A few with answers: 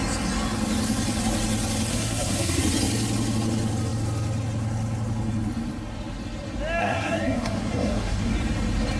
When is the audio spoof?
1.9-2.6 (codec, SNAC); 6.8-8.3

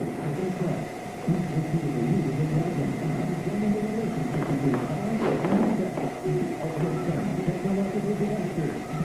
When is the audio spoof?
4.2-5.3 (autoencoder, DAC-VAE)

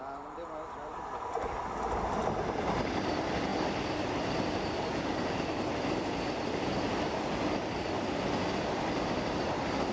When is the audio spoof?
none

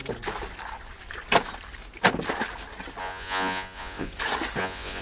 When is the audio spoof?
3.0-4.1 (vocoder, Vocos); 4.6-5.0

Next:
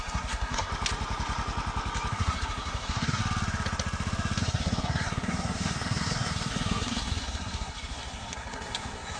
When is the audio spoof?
0.0-0.7 (codec, SNAC); 2.1-3.2; 4.4-9.2

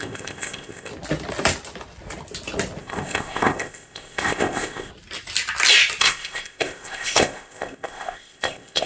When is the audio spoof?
0.0-0.9 (codec, ZipCodec); 2.8-4.9; 6.0-8.9